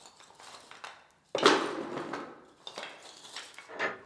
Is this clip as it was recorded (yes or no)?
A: yes